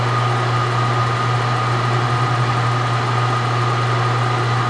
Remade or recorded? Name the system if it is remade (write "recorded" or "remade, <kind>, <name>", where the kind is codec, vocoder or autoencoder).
recorded